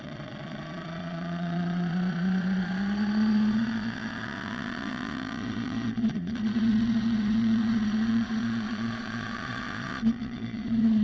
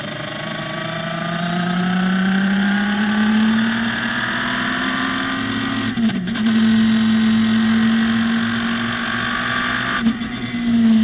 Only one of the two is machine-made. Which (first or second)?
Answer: first